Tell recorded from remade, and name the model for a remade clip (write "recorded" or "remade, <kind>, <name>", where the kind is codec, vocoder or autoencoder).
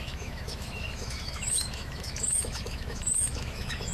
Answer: remade, autoencoder, DAC-VAE